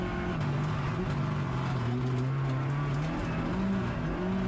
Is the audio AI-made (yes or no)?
no